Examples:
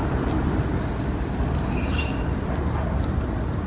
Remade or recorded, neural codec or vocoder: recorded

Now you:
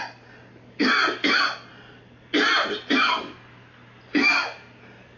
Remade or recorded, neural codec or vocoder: recorded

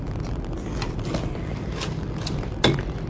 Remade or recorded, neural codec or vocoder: recorded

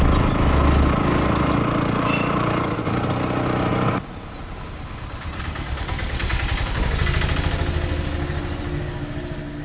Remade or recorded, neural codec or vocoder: recorded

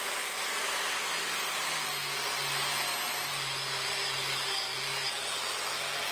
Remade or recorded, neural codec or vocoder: recorded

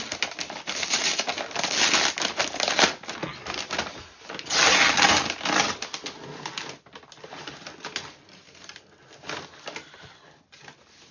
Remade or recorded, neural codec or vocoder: recorded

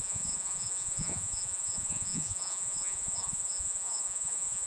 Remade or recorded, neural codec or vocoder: remade, vocoder, Vocos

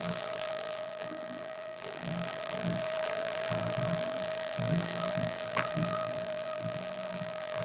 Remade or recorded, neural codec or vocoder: remade, vocoder, BigVGAN v2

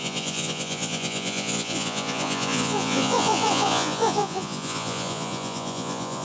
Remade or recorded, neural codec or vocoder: remade, vocoder, Vocos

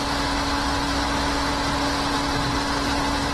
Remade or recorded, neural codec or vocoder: recorded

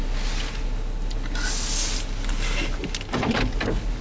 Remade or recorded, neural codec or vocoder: recorded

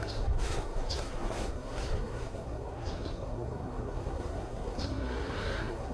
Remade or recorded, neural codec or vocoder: remade, codec, SNAC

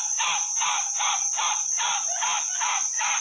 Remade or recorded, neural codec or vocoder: recorded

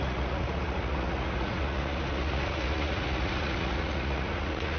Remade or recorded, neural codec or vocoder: remade, vocoder, Vocos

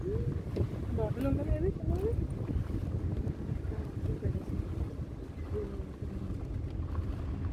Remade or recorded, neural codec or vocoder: recorded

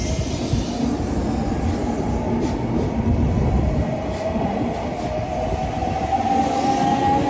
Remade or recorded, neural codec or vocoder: recorded